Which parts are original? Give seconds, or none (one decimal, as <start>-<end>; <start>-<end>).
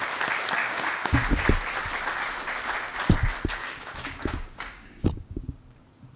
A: 0.0-0.6; 1.3-3.6; 5.5-6.2